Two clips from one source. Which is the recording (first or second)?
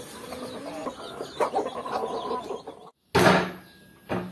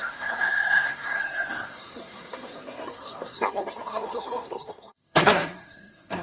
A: first